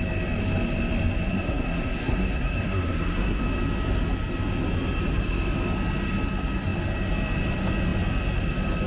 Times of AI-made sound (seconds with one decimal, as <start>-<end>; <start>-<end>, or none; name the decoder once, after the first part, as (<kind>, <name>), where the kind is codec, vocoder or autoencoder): 1.3-3.4 (codec, SNAC)